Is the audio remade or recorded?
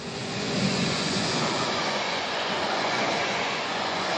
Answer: remade